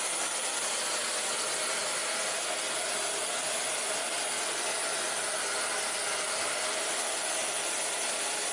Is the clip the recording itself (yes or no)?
yes